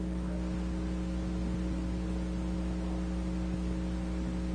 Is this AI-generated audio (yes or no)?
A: no